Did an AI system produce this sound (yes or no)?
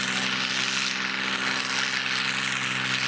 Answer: no